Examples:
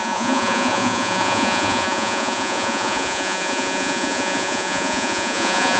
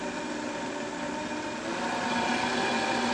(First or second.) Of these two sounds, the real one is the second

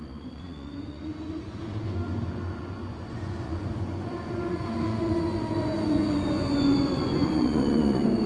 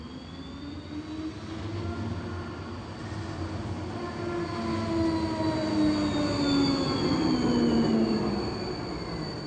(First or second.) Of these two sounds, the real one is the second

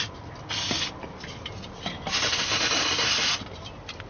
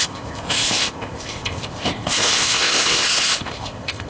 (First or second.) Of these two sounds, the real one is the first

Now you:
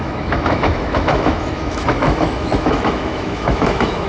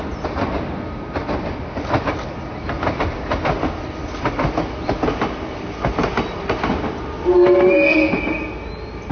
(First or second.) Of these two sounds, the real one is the second